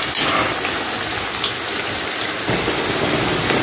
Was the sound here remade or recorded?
recorded